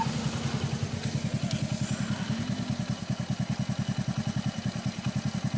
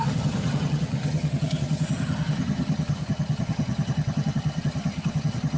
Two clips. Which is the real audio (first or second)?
first